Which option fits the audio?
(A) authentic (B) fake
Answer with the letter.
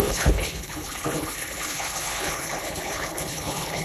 B